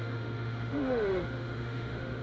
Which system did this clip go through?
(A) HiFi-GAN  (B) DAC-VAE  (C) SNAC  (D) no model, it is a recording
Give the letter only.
B